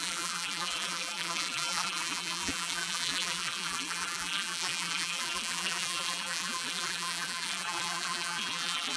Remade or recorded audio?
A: remade